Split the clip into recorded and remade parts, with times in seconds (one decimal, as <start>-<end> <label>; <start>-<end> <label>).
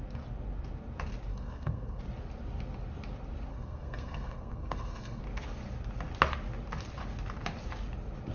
0.0-1.3 recorded; 1.3-2.0 remade; 2.0-3.5 recorded; 3.5-5.2 remade; 5.2-8.3 recorded